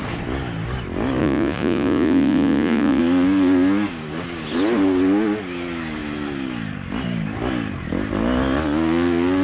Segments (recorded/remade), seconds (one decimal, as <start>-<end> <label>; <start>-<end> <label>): 0.0-1.2 recorded; 1.2-3.0 remade; 3.0-9.4 recorded